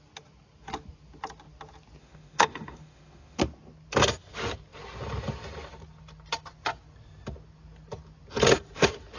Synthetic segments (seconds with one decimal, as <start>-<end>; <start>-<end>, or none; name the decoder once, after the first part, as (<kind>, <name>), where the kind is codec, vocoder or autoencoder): 2.0-3.4 (autoencoder, DAC-VAE)

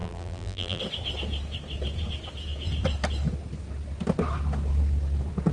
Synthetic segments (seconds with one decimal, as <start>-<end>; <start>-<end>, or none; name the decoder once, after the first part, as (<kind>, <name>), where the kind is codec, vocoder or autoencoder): 0.0-0.8 (vocoder, BigVGAN v2)

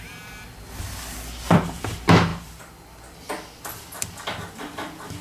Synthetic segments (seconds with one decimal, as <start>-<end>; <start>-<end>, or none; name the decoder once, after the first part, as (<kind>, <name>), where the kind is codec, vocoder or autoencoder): 0.0-5.2 (vocoder, BigVGAN v2)

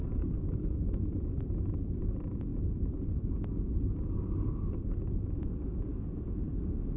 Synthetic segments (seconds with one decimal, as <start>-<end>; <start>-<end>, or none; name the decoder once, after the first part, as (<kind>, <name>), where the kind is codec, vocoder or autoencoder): 0.0-0.9 (codec, DAC)